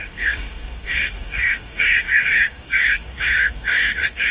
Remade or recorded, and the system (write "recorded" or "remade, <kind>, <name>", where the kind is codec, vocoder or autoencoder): remade, codec, DAC